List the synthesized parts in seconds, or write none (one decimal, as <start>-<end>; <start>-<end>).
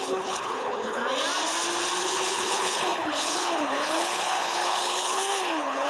0.0-1.0; 2.0-5.9